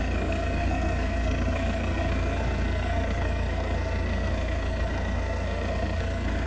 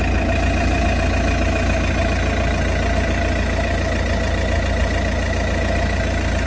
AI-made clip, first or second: first